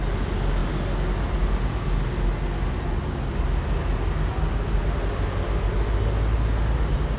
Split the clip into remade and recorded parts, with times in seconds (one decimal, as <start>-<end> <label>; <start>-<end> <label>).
0.0-7.2 recorded